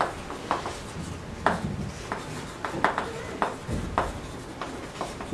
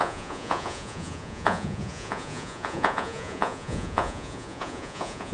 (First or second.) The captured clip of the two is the first